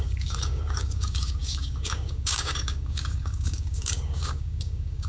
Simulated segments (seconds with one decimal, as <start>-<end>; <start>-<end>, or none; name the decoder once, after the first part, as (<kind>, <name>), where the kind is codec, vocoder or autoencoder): 0.0-5.1 (codec, DAC)